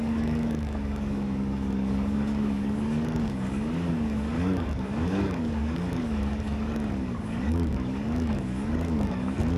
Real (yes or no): no